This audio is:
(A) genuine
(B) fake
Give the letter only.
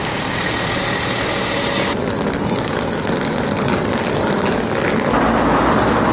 A